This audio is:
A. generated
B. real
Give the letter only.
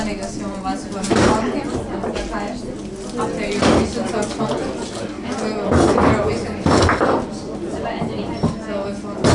B